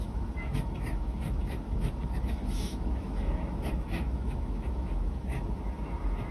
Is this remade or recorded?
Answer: remade